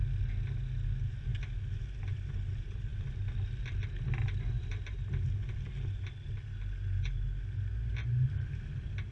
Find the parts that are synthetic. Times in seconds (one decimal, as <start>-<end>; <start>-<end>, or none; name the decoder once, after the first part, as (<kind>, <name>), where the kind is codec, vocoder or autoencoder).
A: none